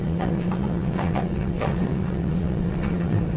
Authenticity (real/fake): fake